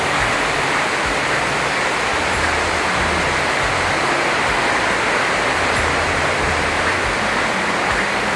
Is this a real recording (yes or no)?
yes